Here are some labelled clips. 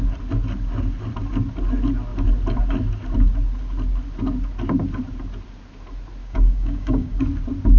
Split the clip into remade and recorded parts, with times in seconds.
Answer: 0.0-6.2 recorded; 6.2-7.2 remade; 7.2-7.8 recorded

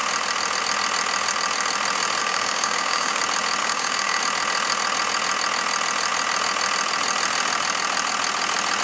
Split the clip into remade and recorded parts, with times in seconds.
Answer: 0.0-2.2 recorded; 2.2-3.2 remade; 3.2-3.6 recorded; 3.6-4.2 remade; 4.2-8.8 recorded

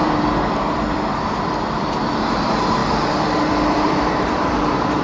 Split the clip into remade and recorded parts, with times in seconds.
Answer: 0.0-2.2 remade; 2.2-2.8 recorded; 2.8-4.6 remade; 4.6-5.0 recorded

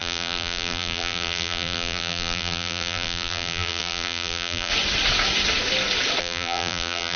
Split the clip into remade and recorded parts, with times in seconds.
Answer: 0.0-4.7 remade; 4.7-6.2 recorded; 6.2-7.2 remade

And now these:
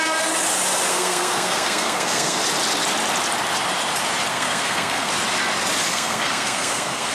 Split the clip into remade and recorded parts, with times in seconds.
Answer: 0.0-0.9 recorded; 0.9-2.4 remade; 2.4-4.3 recorded; 4.3-5.1 remade; 5.1-5.9 recorded; 5.9-7.1 remade